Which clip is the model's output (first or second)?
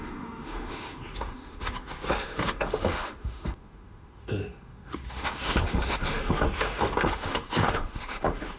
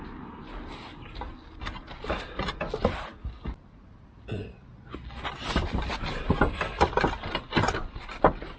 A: first